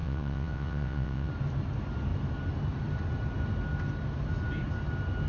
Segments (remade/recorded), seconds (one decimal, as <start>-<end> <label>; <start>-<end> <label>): 0.0-1.3 remade; 1.3-5.3 recorded